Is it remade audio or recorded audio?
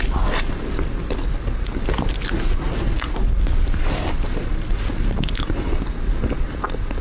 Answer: recorded